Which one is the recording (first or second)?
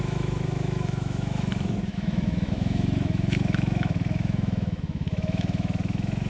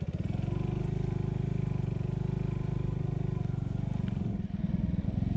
second